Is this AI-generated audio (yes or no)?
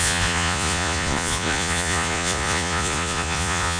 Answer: yes